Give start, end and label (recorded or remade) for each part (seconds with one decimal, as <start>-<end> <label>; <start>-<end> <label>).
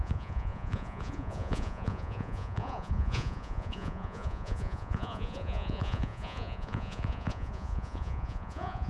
0.0-8.9 remade